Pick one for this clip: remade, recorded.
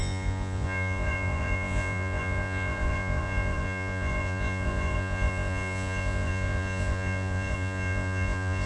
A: remade